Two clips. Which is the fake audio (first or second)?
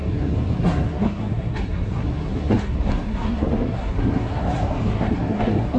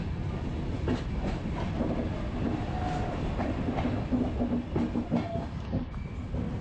first